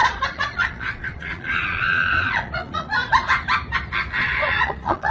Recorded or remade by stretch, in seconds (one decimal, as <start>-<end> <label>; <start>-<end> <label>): 0.0-3.0 remade; 3.0-4.2 recorded; 4.2-5.1 remade